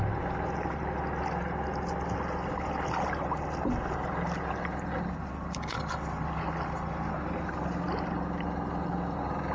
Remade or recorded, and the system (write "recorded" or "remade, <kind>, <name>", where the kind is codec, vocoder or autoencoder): recorded